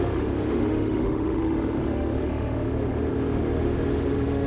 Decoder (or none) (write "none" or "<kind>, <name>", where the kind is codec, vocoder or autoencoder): autoencoder, DAC-VAE